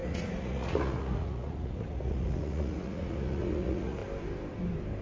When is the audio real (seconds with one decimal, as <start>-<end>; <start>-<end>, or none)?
4.0-5.0